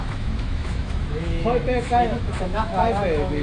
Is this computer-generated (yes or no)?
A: yes